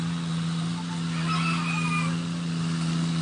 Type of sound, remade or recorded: recorded